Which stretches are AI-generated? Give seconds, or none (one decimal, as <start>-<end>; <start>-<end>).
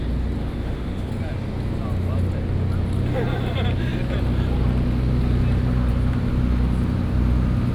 0.4-1.1